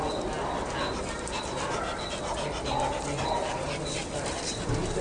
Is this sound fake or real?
real